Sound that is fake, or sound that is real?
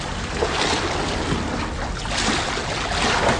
real